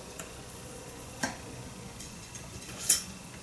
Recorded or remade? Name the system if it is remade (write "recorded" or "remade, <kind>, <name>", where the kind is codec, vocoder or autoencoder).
remade, vocoder, Vocos